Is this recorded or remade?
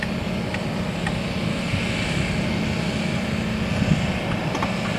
recorded